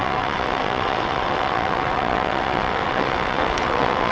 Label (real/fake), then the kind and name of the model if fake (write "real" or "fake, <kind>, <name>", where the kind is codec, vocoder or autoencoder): fake, vocoder, WaveNeXt